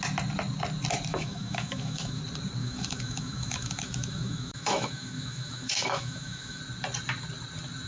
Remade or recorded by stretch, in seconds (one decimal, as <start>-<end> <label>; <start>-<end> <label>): 0.0-1.1 recorded; 1.1-2.2 remade; 2.2-2.6 recorded; 2.6-6.6 remade; 6.6-7.9 recorded